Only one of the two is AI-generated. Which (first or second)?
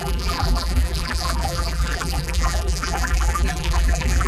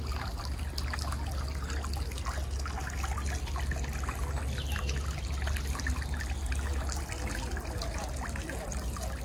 first